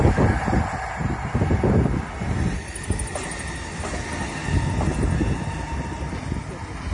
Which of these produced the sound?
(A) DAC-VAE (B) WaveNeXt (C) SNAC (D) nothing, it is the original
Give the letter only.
D